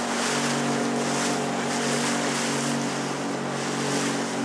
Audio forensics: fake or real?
real